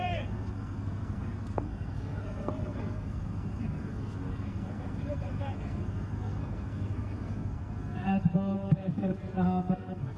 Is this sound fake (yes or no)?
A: yes